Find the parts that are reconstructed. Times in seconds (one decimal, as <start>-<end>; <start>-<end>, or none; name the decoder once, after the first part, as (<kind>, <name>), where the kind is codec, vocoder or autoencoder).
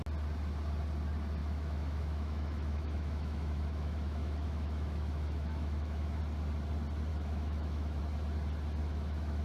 1.4-6.2 (autoencoder, DAC-VAE); 7.1-8.0; 8.8-9.4